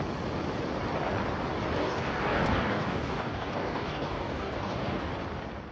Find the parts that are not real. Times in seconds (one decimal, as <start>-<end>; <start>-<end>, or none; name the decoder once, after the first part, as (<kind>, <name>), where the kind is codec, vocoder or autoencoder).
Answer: 1.8-5.1 (codec, DAC)